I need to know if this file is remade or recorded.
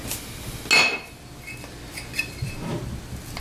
recorded